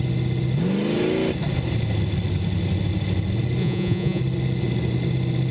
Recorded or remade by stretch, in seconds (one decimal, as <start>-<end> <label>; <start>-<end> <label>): 0.0-3.6 recorded; 3.6-4.2 remade; 4.2-5.5 recorded